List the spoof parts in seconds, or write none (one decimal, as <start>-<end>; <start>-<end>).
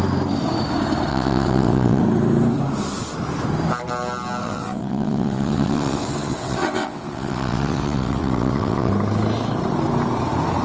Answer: 1.1-2.0; 4.4-8.9